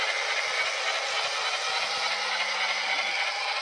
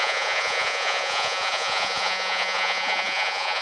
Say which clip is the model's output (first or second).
second